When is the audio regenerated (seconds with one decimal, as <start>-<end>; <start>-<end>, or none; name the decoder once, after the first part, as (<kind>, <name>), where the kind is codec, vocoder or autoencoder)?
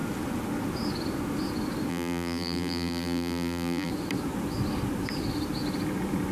1.9-3.9 (vocoder, BigVGAN v2)